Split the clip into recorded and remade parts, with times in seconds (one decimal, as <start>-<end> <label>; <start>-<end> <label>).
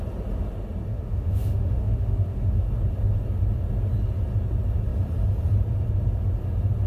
0.0-0.9 recorded; 0.9-2.7 remade; 2.7-6.9 recorded